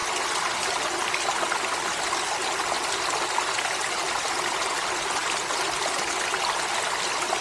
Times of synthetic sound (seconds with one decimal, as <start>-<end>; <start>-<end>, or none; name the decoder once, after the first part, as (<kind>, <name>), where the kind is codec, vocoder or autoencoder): none